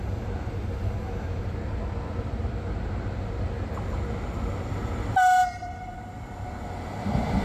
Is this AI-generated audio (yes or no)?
no